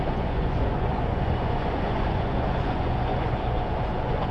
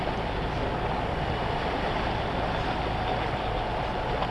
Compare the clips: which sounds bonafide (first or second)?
second